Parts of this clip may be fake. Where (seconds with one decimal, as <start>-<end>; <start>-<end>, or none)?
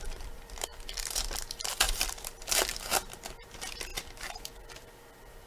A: 0.0-0.7; 1.7-2.9; 3.5-5.5